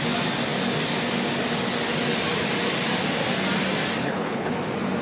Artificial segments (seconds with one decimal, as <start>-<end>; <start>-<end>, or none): 4.0-4.5